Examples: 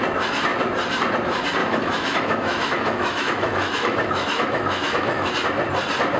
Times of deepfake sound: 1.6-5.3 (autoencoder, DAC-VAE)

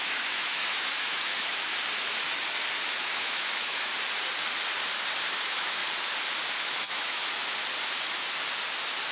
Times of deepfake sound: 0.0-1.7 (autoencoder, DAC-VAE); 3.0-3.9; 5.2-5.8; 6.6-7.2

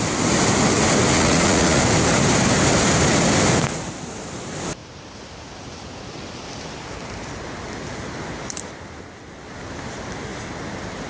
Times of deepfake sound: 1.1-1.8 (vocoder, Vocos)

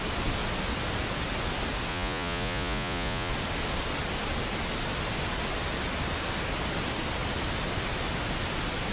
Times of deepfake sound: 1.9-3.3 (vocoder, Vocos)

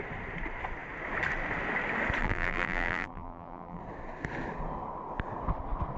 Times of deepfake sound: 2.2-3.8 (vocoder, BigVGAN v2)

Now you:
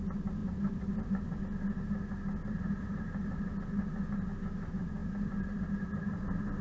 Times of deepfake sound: 0.4-1.4 (vocoder, BigVGAN v2); 2.4-3.5; 5.0-5.6